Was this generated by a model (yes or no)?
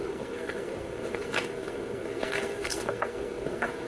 yes